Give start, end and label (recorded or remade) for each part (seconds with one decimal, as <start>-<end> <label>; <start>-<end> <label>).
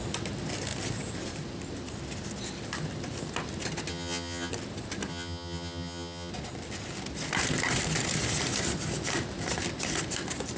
0.0-3.9 recorded; 3.9-4.5 remade; 4.5-5.1 recorded; 5.1-6.3 remade; 6.3-10.6 recorded